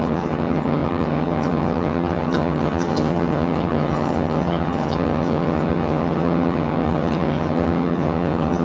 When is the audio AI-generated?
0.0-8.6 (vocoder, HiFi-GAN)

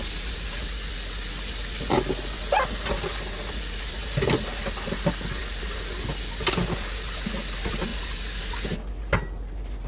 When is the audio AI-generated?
none

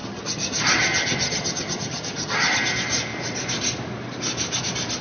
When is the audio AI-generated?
0.0-2.6 (vocoder, HiFi-GAN)